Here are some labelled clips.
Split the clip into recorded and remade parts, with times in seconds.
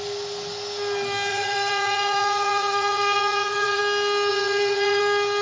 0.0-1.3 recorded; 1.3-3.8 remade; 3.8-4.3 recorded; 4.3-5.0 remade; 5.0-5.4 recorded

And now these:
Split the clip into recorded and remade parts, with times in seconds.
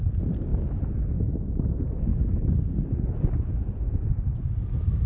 0.0-5.1 recorded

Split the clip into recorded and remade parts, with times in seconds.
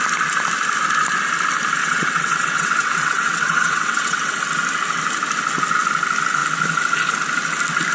0.0-1.8 recorded; 1.8-4.4 remade; 4.4-7.9 recorded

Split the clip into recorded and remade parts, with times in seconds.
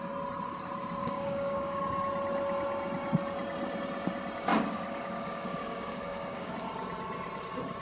0.0-1.0 recorded; 1.0-1.8 remade; 1.8-4.5 recorded; 4.5-6.5 remade; 6.5-7.8 recorded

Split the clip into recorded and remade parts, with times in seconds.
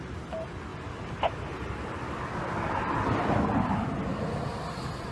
0.0-5.1 recorded